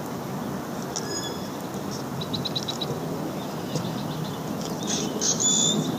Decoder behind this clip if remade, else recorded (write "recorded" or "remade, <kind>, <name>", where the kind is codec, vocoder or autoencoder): recorded